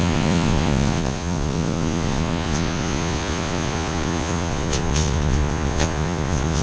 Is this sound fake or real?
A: fake